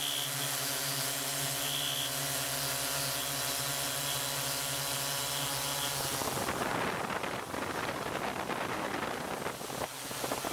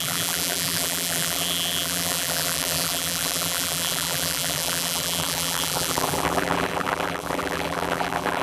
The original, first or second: first